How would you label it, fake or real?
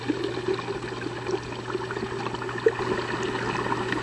real